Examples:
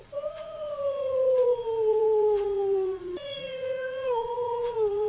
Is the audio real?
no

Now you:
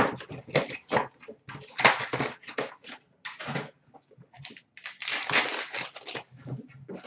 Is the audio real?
yes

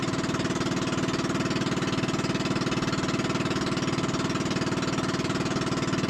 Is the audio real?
yes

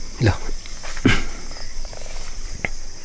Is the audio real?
yes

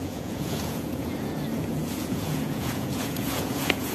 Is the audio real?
no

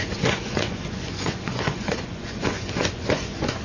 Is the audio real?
no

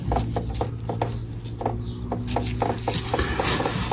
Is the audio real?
yes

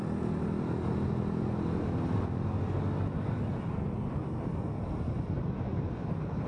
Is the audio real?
yes